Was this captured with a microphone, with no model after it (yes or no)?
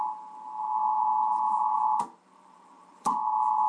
no